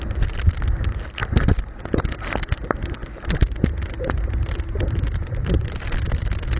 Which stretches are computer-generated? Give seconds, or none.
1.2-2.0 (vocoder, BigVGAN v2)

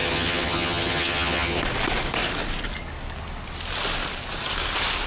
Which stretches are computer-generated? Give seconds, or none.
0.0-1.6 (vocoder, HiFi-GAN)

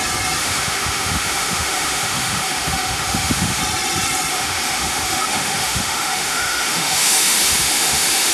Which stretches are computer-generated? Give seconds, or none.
0.4-3.6 (autoencoder, DAC-VAE); 4.3-8.3